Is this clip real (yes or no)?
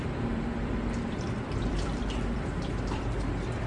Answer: no